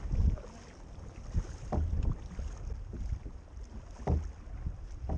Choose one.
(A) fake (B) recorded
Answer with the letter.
B